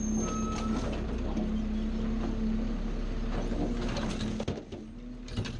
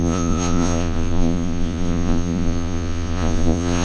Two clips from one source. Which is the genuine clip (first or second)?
first